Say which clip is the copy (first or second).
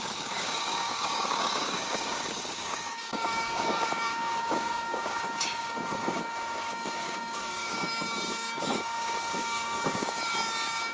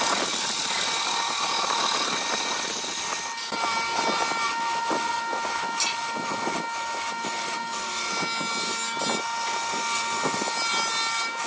first